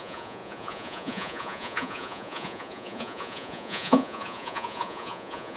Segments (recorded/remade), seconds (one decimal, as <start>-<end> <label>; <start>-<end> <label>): 0.0-5.6 remade